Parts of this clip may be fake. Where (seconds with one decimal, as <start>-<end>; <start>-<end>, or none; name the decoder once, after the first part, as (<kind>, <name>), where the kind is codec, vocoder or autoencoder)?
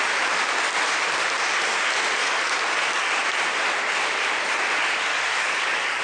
2.2-3.1 (codec, DAC); 5.1-6.0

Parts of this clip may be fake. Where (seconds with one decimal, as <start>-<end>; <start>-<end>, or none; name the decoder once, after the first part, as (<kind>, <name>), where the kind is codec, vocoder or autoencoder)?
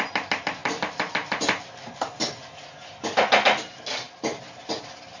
none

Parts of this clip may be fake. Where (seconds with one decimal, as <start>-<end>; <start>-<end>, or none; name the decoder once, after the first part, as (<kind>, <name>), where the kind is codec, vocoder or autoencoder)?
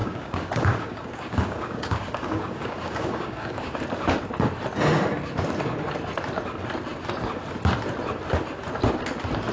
0.0-3.8 (codec, DAC)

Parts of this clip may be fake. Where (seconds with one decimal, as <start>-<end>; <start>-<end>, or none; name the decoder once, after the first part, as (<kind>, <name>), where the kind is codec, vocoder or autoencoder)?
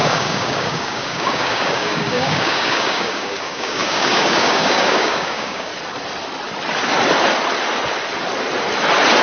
0.0-5.7 (codec, DAC)